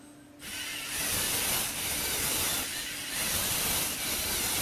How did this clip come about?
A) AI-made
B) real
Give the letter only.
B